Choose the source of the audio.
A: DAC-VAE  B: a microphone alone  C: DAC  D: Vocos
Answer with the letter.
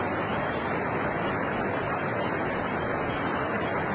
B